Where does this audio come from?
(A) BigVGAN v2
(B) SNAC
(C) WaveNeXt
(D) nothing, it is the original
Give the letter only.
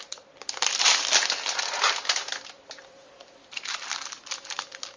D